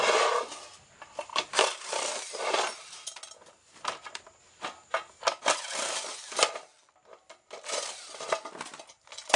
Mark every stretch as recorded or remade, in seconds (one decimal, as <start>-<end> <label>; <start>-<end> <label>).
0.0-1.3 recorded; 1.3-2.4 remade; 2.4-5.6 recorded; 5.6-6.3 remade; 6.3-9.4 recorded